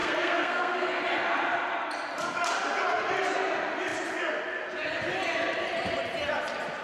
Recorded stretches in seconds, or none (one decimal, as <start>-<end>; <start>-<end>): 1.0-6.8